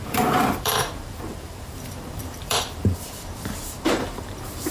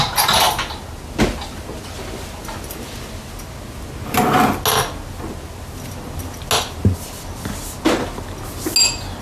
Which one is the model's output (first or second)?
first